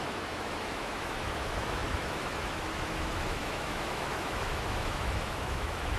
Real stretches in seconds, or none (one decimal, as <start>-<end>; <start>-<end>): none